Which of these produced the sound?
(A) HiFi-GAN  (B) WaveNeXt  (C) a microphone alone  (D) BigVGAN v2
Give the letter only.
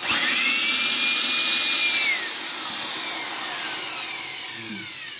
C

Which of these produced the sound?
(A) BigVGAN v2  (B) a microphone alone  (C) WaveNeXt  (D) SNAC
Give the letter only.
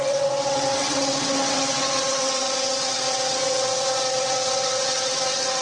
C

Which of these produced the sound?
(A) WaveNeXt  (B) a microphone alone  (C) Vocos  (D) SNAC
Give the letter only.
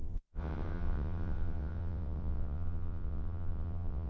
A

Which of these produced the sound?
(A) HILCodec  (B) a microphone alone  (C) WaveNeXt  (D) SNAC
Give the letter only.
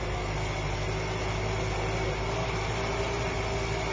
B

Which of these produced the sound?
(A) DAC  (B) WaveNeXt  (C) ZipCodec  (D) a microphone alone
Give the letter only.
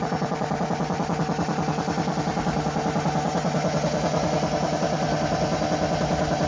D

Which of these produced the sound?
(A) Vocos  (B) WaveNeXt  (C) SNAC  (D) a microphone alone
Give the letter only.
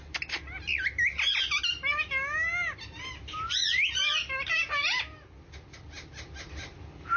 D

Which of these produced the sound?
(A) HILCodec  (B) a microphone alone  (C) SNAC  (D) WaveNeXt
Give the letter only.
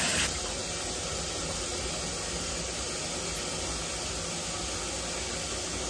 B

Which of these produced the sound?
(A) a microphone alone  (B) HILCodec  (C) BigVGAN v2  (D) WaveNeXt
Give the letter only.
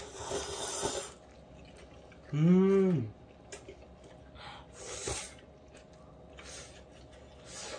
A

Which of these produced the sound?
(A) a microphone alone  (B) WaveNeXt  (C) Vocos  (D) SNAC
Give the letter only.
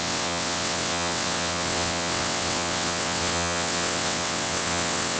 B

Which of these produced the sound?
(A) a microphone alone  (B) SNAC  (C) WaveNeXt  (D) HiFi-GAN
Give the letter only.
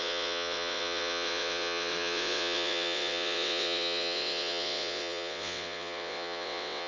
C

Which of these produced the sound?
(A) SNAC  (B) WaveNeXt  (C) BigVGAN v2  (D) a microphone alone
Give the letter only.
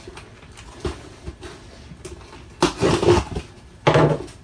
D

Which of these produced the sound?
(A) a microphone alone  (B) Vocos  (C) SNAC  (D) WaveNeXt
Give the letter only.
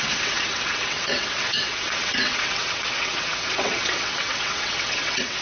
D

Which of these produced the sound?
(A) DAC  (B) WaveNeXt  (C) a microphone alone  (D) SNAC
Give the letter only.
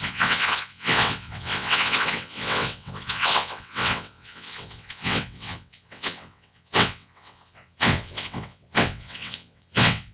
B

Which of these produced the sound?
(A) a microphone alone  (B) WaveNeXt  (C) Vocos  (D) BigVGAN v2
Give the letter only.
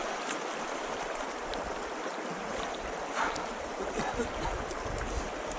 A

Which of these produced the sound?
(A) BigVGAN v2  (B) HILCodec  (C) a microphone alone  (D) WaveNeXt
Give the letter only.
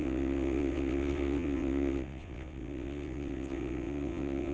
D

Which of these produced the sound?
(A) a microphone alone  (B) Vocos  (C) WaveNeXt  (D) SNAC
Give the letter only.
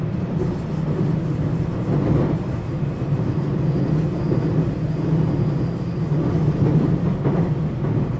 A